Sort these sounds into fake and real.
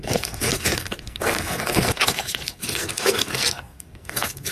fake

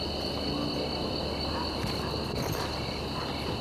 real